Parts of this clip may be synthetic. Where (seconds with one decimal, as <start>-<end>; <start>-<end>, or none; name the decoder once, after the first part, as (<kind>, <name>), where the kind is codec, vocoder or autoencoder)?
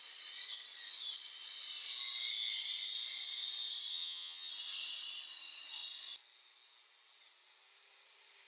3.9-4.5 (vocoder, HiFi-GAN)